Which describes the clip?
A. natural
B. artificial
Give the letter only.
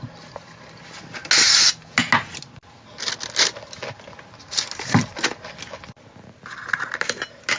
A